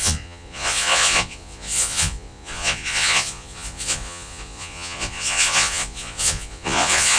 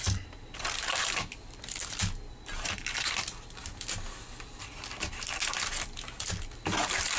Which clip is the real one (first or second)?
second